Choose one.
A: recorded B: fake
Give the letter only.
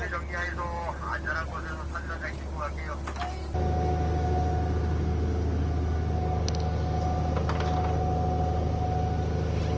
A